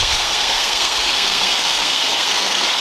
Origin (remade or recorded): remade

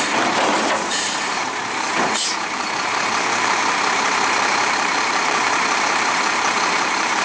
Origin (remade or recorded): remade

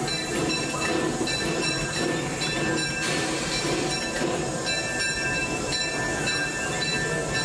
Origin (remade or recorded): recorded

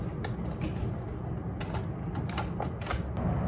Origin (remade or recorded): recorded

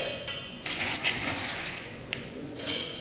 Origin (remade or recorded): remade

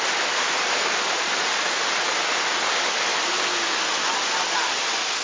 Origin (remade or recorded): recorded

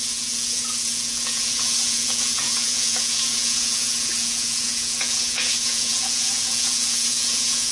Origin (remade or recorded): remade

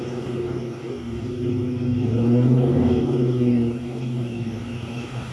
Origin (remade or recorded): remade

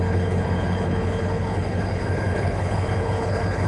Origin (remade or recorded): remade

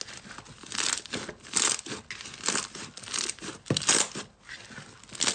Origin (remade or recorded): recorded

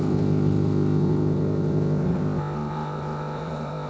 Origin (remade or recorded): remade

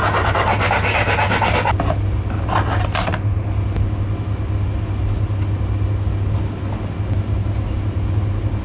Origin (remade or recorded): recorded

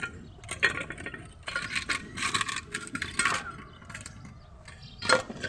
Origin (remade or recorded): recorded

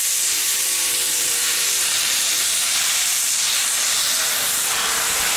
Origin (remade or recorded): remade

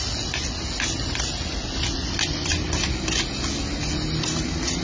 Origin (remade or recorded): recorded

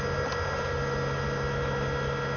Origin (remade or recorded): recorded